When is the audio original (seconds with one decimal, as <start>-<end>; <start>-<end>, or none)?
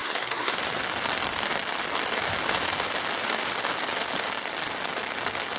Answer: 0.6-5.6